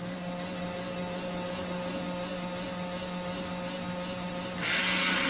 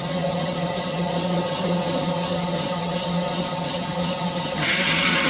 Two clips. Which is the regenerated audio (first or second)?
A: second